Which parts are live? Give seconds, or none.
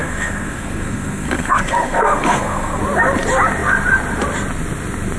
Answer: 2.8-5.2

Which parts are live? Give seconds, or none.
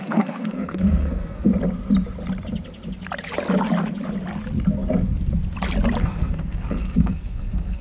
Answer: 1.5-6.0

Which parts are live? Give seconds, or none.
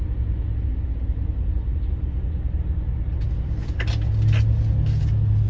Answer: 0.0-5.5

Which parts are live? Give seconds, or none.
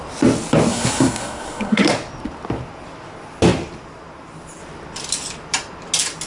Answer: 0.0-0.7; 1.9-6.3